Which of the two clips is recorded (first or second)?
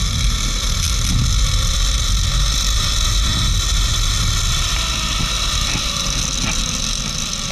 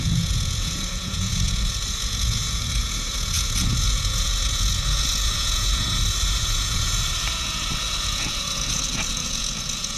first